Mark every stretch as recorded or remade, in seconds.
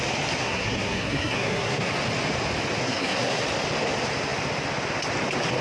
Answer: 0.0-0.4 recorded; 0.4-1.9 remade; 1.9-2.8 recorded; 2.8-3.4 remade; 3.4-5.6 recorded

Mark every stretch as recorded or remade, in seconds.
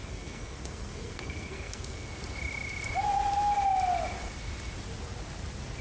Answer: 0.0-2.1 remade; 2.1-5.8 recorded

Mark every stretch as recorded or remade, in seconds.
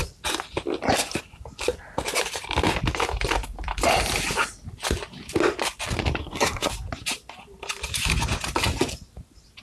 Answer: 0.0-6.2 recorded; 6.2-6.7 remade; 6.7-9.6 recorded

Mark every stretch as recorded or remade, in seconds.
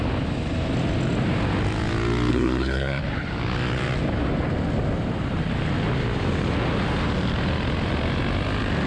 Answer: 0.0-2.3 recorded; 2.3-3.0 remade; 3.0-8.9 recorded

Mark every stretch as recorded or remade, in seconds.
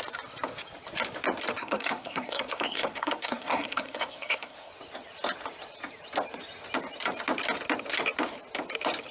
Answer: 0.0-1.6 recorded; 1.6-4.7 remade; 4.7-9.1 recorded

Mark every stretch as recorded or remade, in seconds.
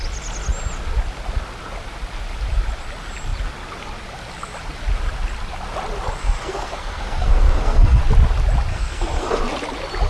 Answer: 0.0-6.2 recorded; 6.2-8.0 remade; 8.0-8.7 recorded; 8.7-9.4 remade; 9.4-10.1 recorded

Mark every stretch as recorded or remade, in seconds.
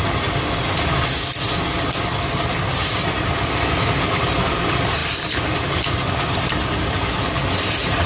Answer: 0.0-8.1 recorded